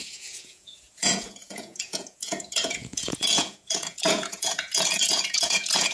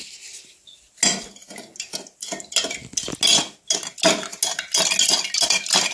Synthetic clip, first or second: first